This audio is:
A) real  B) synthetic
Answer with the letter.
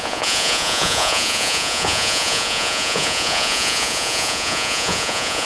B